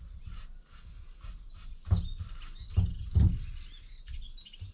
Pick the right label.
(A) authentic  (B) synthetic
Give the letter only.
A